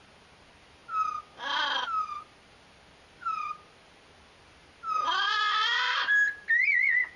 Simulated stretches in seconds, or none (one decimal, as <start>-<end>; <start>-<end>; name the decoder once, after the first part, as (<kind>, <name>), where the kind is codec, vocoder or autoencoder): none